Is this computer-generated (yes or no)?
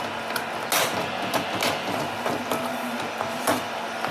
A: no